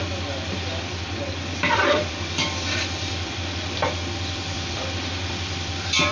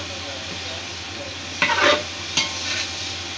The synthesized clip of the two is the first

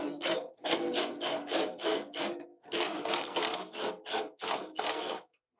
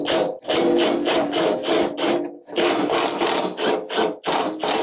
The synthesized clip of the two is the first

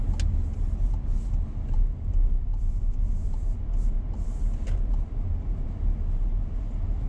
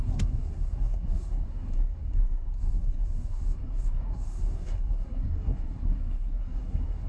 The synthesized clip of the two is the second